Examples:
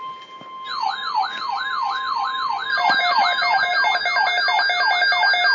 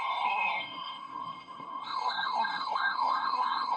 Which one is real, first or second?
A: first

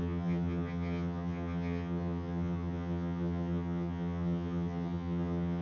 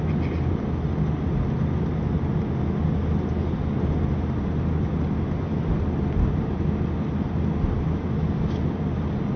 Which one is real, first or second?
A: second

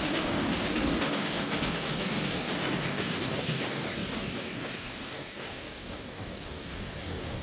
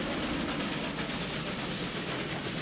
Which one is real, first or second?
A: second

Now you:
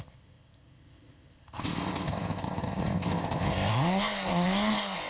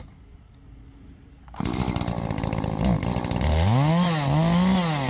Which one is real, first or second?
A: second